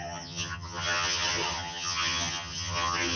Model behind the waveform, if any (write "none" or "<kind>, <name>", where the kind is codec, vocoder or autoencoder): vocoder, HiFi-GAN